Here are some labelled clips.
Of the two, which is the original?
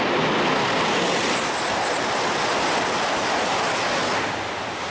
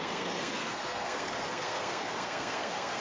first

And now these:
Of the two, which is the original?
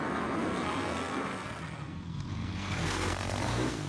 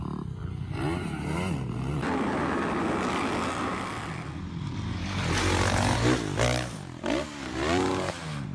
second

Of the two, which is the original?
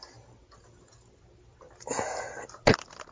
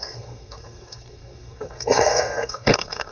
first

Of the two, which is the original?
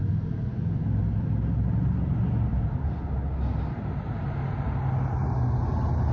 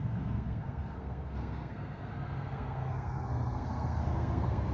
first